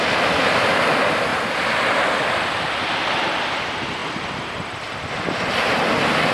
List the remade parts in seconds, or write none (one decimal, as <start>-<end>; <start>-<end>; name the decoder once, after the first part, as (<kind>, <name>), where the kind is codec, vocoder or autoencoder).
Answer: 0.0-1.3 (vocoder, BigVGAN v2); 2.9-4.0; 5.6-6.3